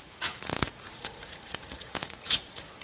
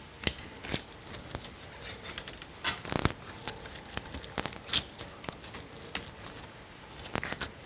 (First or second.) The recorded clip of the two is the second